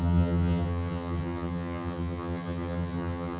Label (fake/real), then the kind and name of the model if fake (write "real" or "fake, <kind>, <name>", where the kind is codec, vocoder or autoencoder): fake, vocoder, HiFi-GAN